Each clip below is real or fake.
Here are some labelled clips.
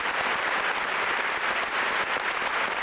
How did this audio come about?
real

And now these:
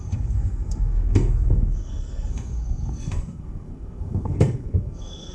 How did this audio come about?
fake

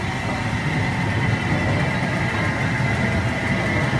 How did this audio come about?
real